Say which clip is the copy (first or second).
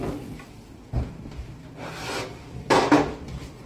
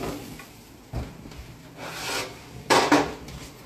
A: first